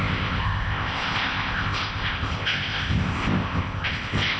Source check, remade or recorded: remade